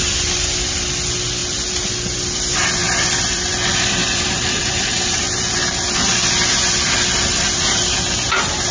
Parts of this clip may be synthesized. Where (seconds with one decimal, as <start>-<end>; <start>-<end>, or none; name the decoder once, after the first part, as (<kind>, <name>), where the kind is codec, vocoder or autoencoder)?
1.4-1.9 (vocoder, BigVGAN v2); 2.8-3.5; 4.0-6.3